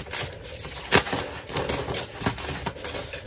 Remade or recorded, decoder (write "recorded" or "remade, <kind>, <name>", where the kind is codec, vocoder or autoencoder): recorded